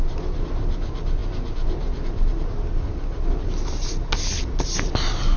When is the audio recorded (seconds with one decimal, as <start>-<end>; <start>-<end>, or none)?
0.0-5.4